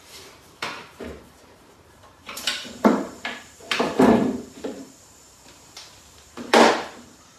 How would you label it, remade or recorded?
remade